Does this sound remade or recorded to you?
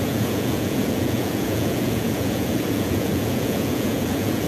remade